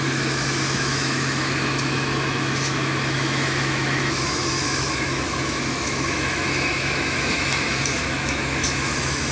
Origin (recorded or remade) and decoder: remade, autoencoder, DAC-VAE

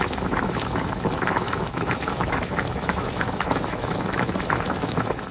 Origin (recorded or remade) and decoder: remade, autoencoder, DAC-VAE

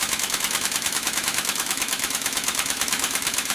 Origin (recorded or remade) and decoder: remade, autoencoder, DAC-VAE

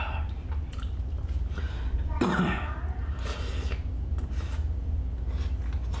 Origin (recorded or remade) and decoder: recorded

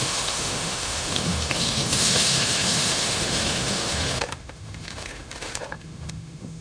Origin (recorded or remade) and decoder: remade, autoencoder, DAC-VAE